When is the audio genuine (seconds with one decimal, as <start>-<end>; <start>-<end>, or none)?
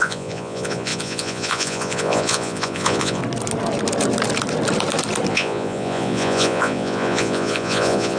3.2-5.3